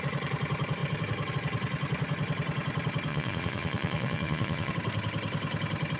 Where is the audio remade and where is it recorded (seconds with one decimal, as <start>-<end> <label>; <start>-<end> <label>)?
0.0-3.1 recorded; 3.1-4.7 remade; 4.7-6.0 recorded